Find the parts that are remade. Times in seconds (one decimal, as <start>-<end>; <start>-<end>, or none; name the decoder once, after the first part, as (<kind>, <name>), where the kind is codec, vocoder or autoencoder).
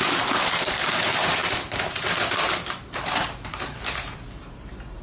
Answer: 0.0-5.0 (vocoder, BigVGAN v2)